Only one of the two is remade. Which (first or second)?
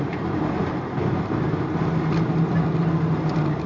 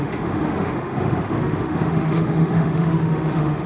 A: second